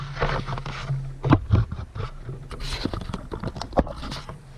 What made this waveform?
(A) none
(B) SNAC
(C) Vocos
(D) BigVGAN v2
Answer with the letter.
A